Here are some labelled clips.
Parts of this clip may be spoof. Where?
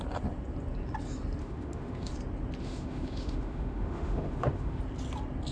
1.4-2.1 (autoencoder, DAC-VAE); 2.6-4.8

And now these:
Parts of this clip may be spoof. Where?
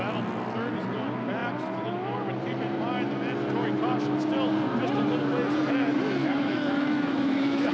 6.2-7.7 (autoencoder, DAC-VAE)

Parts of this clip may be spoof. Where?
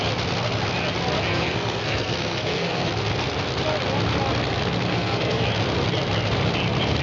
1.3-2.9 (codec, SNAC); 4.9-5.4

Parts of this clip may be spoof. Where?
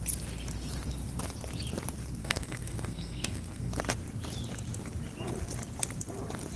2.2-3.7 (codec, SNAC)